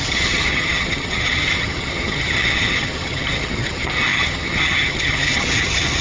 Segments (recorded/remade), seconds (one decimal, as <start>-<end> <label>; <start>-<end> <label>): 0.0-6.0 remade